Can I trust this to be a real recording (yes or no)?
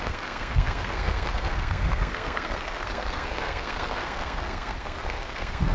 no